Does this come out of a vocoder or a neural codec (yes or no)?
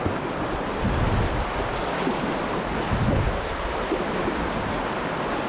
no